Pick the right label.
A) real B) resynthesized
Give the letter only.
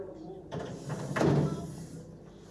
A